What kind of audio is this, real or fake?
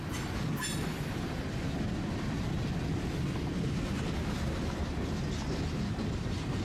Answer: real